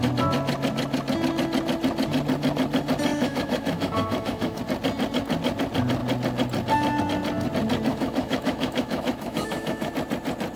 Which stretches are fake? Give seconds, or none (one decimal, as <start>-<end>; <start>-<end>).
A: 3.1-4.6; 7.9-9.9